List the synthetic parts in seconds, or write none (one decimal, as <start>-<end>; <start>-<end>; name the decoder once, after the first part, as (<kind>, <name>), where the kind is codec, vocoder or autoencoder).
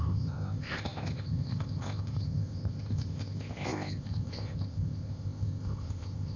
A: 0.0-6.4 (codec, ZipCodec)